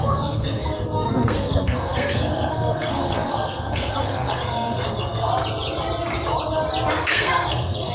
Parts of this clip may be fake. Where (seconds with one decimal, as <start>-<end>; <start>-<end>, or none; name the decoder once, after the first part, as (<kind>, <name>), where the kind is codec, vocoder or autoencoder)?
0.0-5.3 (codec, SNAC); 6.9-7.9